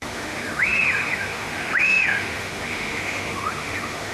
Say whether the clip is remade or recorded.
remade